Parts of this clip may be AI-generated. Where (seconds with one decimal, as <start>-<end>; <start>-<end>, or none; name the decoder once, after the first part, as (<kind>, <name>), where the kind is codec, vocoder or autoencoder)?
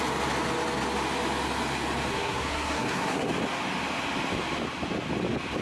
2.1-3.3 (codec, SNAC)